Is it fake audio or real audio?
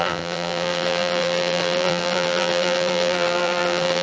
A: fake